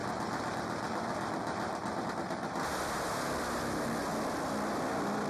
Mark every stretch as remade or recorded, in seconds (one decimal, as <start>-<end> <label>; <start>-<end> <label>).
0.0-5.3 recorded